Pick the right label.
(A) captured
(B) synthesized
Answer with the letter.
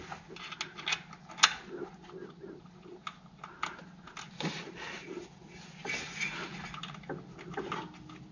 A